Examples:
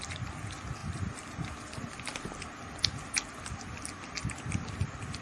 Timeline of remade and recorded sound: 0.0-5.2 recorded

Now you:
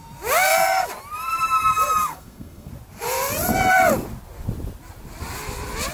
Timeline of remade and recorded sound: 0.0-2.0 recorded; 2.0-2.7 remade; 2.7-5.9 recorded

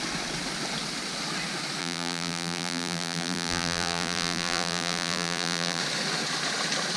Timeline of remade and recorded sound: 0.0-1.8 recorded; 1.8-5.8 remade; 5.8-7.0 recorded

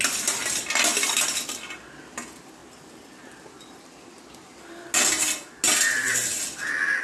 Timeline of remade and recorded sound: 0.0-7.0 recorded

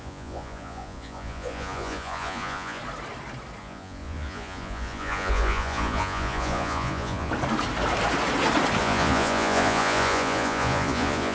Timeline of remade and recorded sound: 0.0-2.8 remade; 2.8-3.6 recorded; 3.6-7.3 remade; 7.3-8.8 recorded; 8.8-11.3 remade

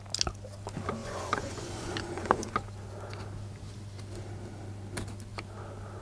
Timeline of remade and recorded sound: 0.0-1.0 recorded; 1.0-2.5 remade; 2.5-6.0 recorded

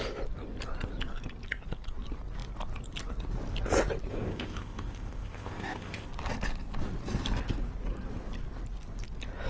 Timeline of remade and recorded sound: 0.0-4.1 recorded; 4.1-6.1 remade; 6.1-9.5 recorded

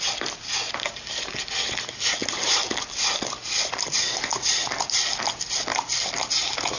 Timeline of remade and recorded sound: 0.0-6.8 recorded